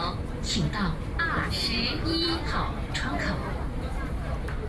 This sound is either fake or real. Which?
fake